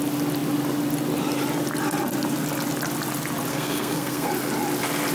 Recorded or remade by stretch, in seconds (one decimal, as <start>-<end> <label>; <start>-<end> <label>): 0.0-3.5 recorded; 3.5-4.3 remade; 4.3-5.1 recorded